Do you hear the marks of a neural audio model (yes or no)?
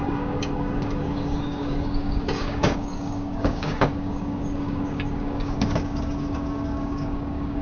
yes